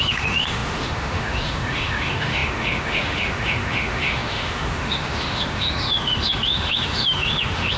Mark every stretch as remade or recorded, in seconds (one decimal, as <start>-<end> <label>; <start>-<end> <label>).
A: 0.0-7.8 remade